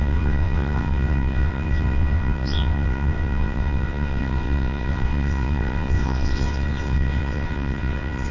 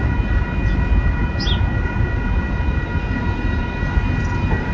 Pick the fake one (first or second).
first